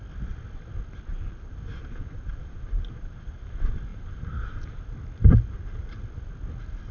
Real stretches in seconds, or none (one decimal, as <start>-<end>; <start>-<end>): 0.0-1.1; 3.5-3.9; 4.8-5.5; 6.0-6.9